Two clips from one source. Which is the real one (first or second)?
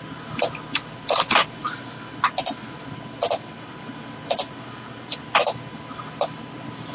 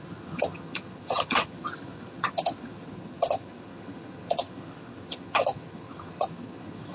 first